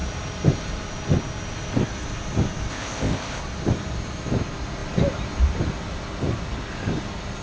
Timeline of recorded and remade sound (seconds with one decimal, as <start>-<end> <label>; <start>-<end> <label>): 0.0-2.7 recorded; 2.7-3.4 remade; 3.4-7.4 recorded